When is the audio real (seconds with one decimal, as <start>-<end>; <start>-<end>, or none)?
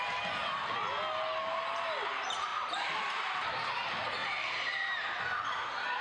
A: 0.0-2.5; 3.7-4.2; 5.2-6.0